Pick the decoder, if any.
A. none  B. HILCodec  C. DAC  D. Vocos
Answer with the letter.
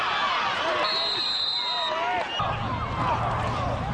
A